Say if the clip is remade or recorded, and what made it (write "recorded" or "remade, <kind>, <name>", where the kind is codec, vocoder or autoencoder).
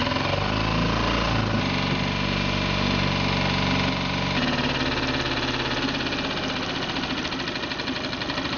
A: recorded